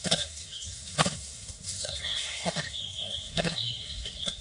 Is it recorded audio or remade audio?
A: remade